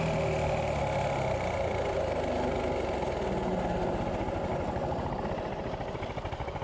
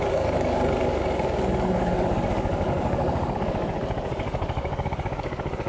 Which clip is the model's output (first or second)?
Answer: second